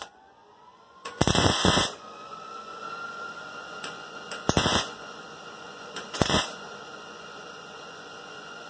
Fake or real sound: fake